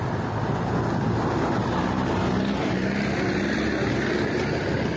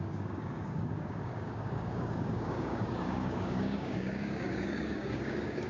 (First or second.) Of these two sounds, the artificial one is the second